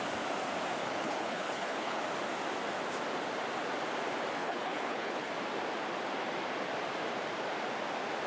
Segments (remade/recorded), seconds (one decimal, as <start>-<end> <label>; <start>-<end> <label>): 0.0-0.8 recorded; 0.8-2.0 remade; 2.0-4.4 recorded; 4.4-5.3 remade; 5.3-8.3 recorded